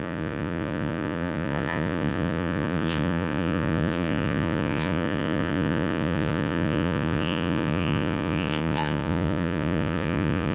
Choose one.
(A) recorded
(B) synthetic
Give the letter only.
B